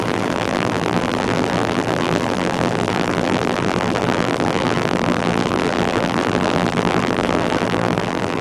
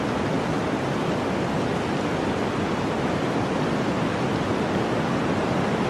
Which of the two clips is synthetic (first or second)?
first